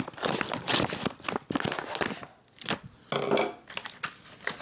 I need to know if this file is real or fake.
real